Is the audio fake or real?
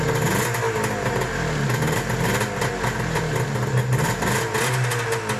real